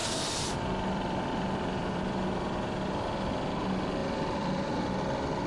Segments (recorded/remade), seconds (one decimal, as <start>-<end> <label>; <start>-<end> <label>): 0.0-3.3 remade; 3.3-4.0 recorded; 4.0-5.0 remade; 5.0-5.5 recorded